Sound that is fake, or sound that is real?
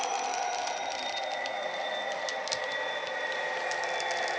real